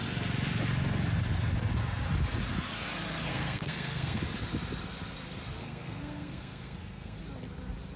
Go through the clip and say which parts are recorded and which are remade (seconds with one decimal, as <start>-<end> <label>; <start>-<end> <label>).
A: 0.0-3.3 recorded; 3.3-4.2 remade; 4.2-5.6 recorded; 5.6-7.2 remade; 7.2-8.0 recorded